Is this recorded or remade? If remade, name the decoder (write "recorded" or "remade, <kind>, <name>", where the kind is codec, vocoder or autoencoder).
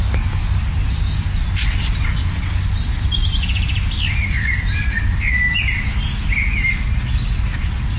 recorded